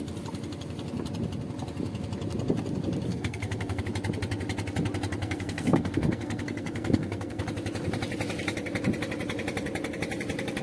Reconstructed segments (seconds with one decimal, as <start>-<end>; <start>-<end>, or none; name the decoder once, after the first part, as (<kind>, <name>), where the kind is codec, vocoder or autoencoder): 3.1-3.8 (codec, SNAC); 5.2-7.4